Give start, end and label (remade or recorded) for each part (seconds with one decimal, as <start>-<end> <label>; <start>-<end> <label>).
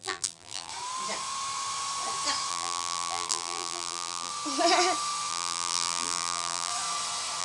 0.0-0.7 remade; 0.7-2.5 recorded; 2.5-4.3 remade; 4.3-5.3 recorded; 5.3-6.7 remade; 6.7-7.4 recorded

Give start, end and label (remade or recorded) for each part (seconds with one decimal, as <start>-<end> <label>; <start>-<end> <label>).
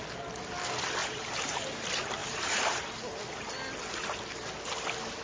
0.0-1.0 recorded; 1.0-1.8 remade; 1.8-2.2 recorded; 2.2-2.8 remade; 2.8-5.2 recorded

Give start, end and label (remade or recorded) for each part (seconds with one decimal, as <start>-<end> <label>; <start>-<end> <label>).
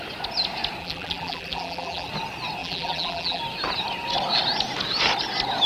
0.0-0.8 recorded; 0.8-2.1 remade; 2.1-2.6 recorded; 2.6-3.4 remade; 3.4-5.7 recorded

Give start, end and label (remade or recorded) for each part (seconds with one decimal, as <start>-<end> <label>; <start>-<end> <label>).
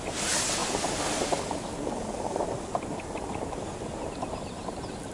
0.0-5.1 recorded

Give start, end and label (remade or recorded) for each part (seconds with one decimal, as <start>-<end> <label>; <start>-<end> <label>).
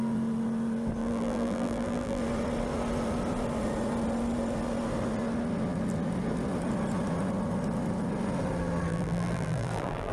0.0-1.0 recorded; 1.0-2.2 remade; 2.2-8.9 recorded; 8.9-10.1 remade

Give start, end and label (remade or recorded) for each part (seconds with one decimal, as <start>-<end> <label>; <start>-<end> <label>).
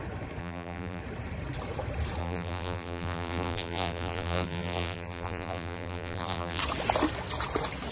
0.0-0.4 recorded; 0.4-1.0 remade; 1.0-2.2 recorded; 2.2-6.6 remade; 6.6-7.9 recorded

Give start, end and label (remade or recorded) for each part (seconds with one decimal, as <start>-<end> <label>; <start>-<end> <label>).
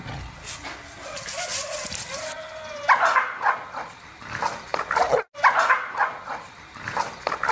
0.0-7.5 recorded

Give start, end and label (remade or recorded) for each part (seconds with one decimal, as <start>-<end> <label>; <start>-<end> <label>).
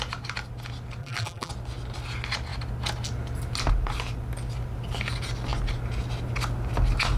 0.0-1.0 recorded; 1.0-1.5 remade; 1.5-7.2 recorded